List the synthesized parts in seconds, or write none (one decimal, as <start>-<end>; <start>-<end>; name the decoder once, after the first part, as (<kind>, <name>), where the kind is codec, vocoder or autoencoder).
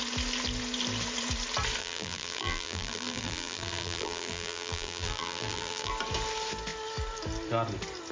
1.8-5.9 (vocoder, BigVGAN v2)